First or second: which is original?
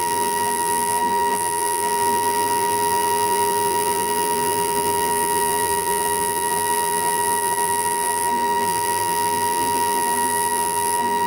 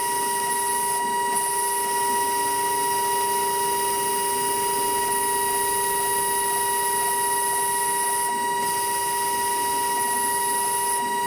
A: second